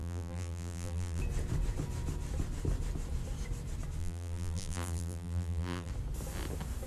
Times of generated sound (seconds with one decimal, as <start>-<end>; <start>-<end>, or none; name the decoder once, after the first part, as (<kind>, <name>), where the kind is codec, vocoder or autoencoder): 0.0-1.2 (vocoder, BigVGAN v2); 4.0-5.9